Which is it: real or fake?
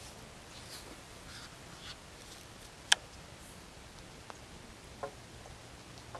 real